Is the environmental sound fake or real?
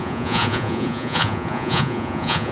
fake